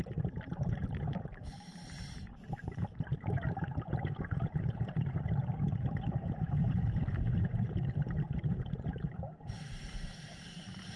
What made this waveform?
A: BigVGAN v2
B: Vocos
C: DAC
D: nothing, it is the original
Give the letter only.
A